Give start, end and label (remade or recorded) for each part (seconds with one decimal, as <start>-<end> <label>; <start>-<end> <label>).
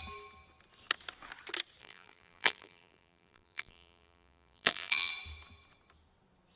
0.0-1.8 recorded; 1.8-5.1 remade; 5.1-6.6 recorded